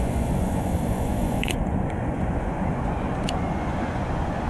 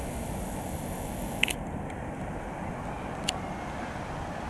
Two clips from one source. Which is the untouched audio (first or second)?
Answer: second